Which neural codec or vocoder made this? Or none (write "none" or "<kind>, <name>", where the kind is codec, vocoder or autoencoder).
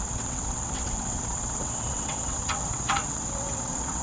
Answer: vocoder, WaveNeXt